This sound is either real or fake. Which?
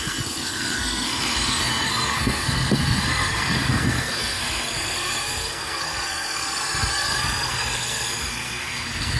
fake